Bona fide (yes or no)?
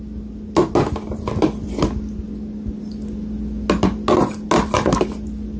yes